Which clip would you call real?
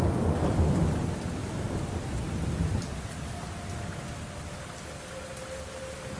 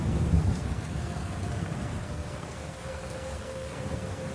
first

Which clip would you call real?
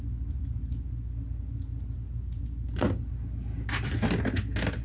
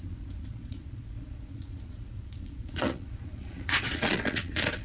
first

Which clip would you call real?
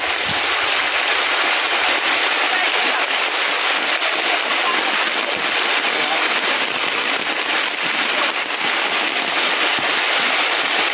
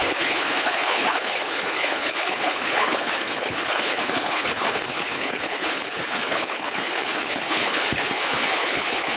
first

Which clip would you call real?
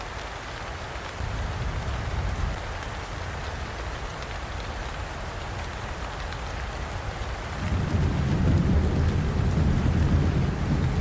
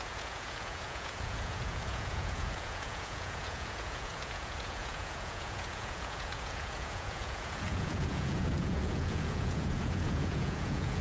first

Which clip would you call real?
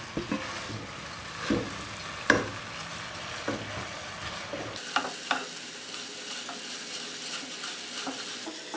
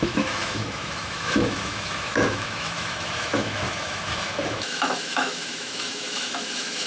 first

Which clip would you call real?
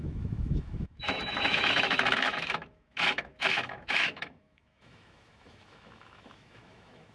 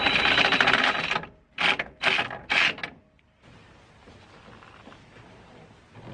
second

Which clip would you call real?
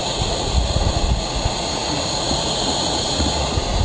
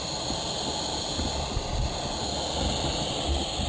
second